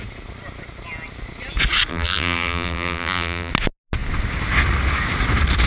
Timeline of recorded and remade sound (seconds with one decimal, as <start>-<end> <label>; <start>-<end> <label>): 0.0-1.9 recorded; 1.9-3.5 remade; 3.5-5.7 recorded